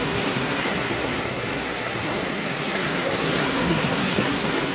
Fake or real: fake